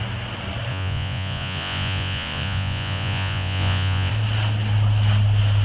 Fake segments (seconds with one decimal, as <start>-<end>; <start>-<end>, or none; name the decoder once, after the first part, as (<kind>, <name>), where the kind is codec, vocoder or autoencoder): 0.7-4.1 (vocoder, Vocos)